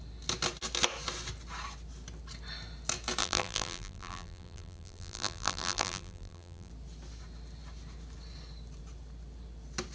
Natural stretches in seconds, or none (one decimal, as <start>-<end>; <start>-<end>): 0.0-3.2; 6.7-9.9